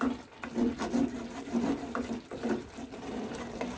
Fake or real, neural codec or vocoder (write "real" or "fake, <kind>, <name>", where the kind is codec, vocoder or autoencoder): real